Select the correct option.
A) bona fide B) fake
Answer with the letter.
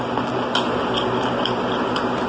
A